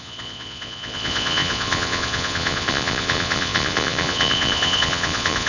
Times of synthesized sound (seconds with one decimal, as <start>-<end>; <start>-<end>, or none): 0.0-5.5